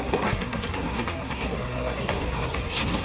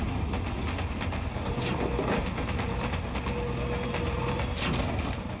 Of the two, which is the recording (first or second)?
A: second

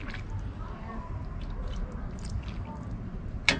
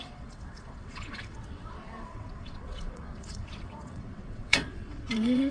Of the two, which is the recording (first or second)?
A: first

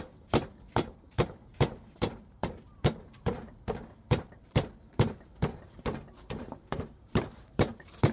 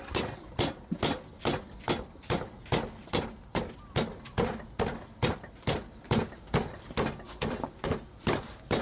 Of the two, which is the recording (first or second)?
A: second